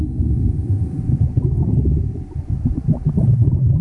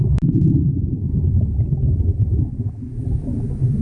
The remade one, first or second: first